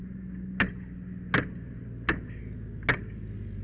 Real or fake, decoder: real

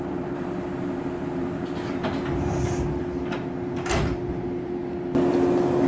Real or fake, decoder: real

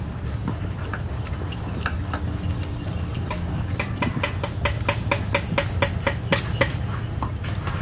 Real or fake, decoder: real